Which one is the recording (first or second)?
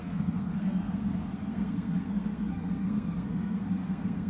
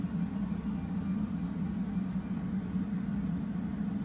second